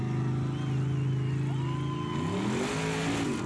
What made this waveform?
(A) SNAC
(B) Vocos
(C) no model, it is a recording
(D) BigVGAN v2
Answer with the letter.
C